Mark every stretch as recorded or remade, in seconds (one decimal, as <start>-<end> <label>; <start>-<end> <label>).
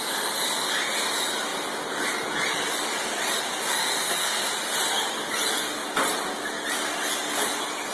0.0-3.8 recorded; 3.8-4.4 remade; 4.4-7.9 recorded